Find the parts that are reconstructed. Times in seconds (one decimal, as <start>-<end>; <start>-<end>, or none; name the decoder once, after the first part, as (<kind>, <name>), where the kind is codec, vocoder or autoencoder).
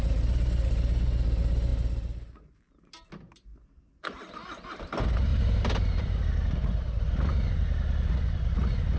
5.3-6.2 (vocoder, BigVGAN v2)